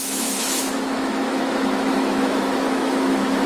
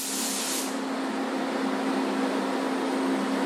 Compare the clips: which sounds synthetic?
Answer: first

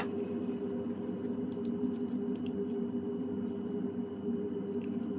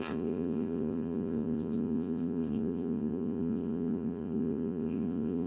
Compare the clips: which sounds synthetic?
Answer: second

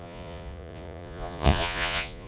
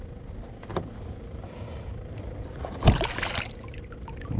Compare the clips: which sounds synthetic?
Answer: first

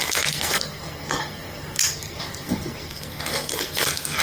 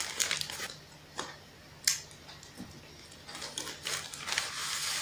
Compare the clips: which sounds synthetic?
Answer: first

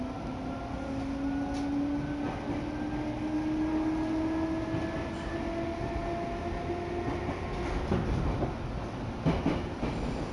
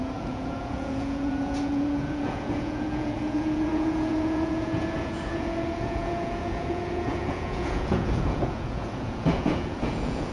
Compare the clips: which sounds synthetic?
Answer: second